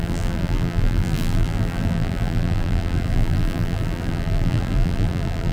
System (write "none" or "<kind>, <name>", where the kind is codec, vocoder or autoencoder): vocoder, BigVGAN v2